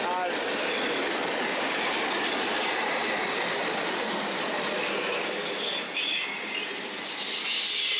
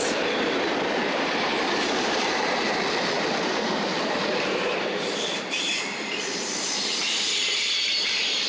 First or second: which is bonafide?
first